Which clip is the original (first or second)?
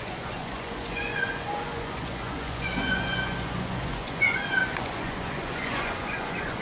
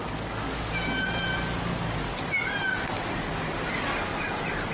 second